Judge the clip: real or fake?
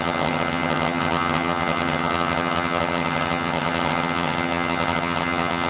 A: fake